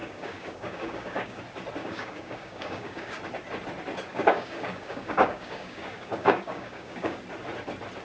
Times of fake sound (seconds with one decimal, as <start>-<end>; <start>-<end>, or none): 0.0-1.4; 1.8-3.2; 4.1-7.2